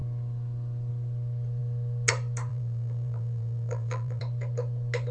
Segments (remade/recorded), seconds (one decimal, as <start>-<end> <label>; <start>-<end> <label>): 0.0-2.5 recorded; 2.5-4.2 remade; 4.2-5.1 recorded